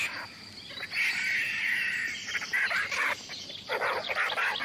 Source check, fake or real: real